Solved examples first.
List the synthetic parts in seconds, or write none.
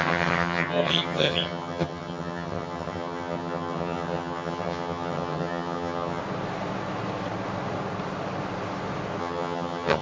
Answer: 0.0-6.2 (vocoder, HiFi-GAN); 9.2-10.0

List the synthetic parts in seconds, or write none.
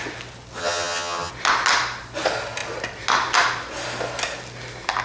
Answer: 0.6-1.3 (vocoder, HiFi-GAN)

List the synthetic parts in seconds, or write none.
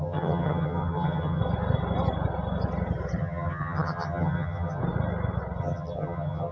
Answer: 0.0-1.4 (vocoder, HiFi-GAN); 3.2-4.8; 5.6-6.5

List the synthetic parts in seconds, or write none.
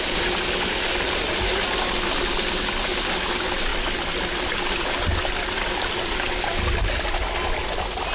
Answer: none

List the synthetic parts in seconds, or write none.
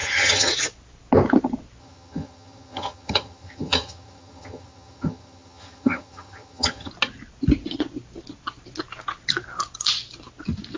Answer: 0.0-0.5 (vocoder, HiFi-GAN); 1.8-6.9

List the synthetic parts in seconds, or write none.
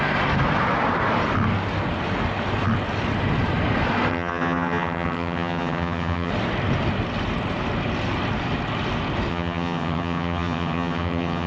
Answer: 4.1-6.3 (vocoder, HiFi-GAN); 9.3-11.5